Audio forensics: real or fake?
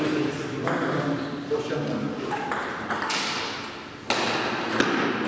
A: real